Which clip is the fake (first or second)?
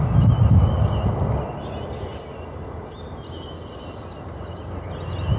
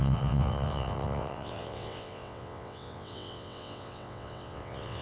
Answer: second